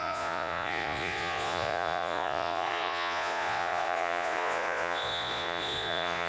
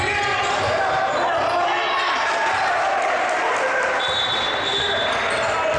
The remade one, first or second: first